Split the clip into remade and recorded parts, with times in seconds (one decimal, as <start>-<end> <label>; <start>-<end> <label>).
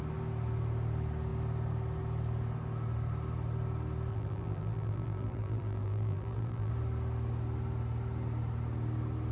0.0-4.1 recorded; 4.1-6.7 remade; 6.7-9.3 recorded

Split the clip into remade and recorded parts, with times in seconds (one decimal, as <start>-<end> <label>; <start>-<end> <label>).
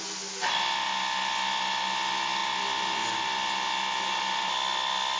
0.0-5.2 recorded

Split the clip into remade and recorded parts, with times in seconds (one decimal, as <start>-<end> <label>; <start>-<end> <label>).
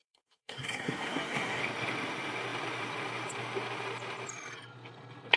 0.0-1.6 remade; 1.6-5.4 recorded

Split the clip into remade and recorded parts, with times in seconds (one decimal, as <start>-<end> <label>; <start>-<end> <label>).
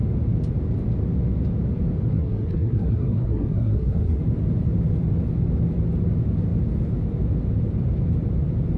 0.0-2.1 recorded; 2.1-4.2 remade; 4.2-8.8 recorded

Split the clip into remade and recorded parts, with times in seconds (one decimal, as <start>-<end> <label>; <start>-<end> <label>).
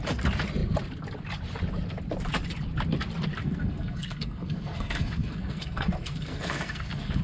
0.0-3.4 recorded; 3.4-7.2 remade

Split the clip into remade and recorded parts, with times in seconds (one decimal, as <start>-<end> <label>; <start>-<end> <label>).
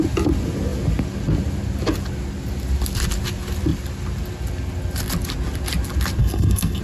0.0-6.2 recorded; 6.2-6.8 remade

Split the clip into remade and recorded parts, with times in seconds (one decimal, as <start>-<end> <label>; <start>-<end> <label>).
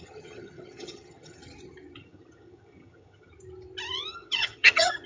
0.0-1.4 remade; 1.4-2.0 recorded; 2.0-3.3 remade; 3.3-4.1 recorded; 4.1-5.1 remade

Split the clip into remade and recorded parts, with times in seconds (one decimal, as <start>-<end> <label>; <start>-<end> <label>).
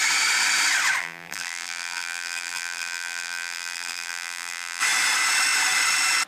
0.0-1.0 recorded; 1.0-4.8 remade; 4.8-6.3 recorded